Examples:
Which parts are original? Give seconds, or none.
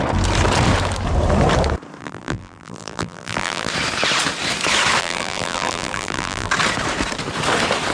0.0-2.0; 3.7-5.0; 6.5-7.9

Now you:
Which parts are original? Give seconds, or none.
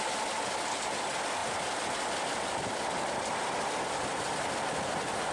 0.0-5.3